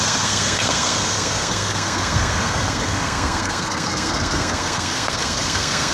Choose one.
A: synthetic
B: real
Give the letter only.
A